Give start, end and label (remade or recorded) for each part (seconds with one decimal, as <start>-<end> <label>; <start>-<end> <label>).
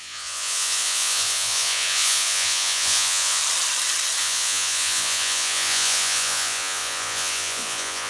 0.0-3.4 remade; 3.4-4.2 recorded; 4.2-8.1 remade